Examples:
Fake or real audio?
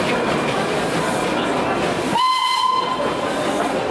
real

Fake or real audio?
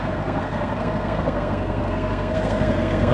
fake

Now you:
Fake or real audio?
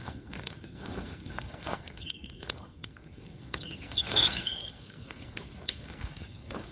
fake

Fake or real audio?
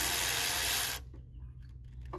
real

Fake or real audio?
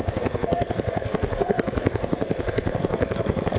fake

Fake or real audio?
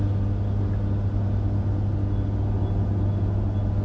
real